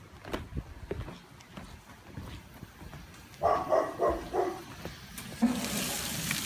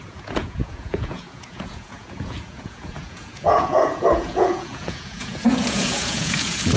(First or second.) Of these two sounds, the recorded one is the first